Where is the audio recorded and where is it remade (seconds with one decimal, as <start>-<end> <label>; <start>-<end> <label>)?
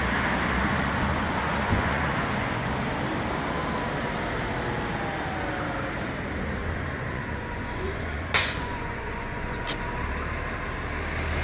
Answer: 0.0-0.6 recorded; 0.6-2.7 remade; 2.7-6.6 recorded; 6.6-9.6 remade; 9.6-11.4 recorded